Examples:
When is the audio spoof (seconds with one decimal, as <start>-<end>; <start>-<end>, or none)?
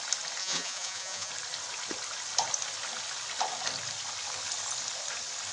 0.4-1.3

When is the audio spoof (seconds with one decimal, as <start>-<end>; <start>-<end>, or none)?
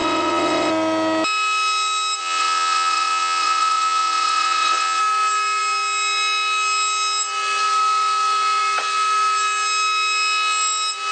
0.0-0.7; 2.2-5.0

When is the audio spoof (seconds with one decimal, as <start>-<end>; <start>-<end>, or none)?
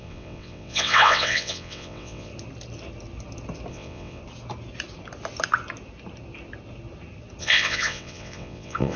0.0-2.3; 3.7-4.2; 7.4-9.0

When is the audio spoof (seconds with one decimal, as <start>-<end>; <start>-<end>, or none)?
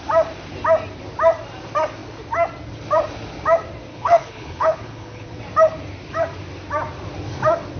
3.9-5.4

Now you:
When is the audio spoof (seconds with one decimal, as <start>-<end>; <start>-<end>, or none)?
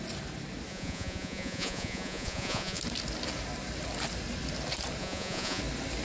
0.7-2.8; 5.0-5.6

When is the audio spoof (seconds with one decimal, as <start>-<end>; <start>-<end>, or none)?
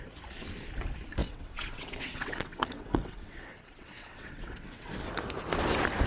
1.2-4.9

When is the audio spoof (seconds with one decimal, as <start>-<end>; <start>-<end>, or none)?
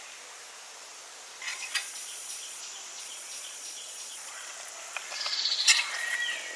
1.5-2.6; 3.0-4.5; 5.3-6.0